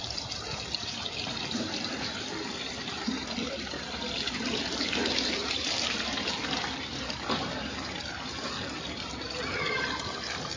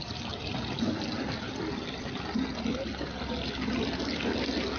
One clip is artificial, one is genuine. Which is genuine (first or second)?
second